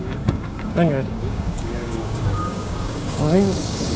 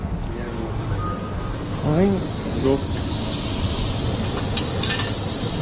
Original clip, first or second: second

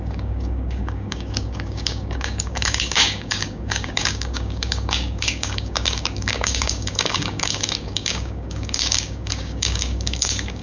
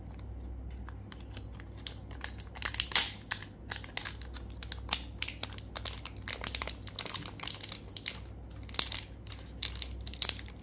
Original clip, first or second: second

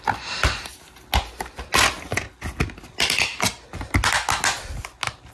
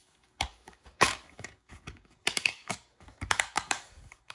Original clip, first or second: first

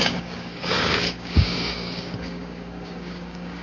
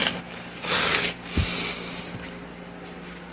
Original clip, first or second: second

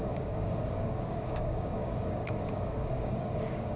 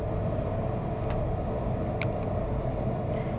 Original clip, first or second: second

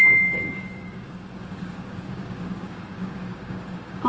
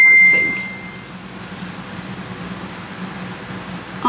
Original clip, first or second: second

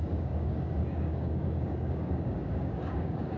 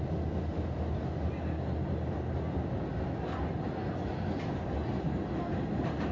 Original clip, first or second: second